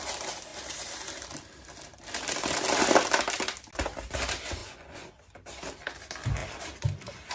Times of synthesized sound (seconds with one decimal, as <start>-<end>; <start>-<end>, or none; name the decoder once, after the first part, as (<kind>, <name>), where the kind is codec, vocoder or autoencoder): 4.6-5.1 (vocoder, Vocos)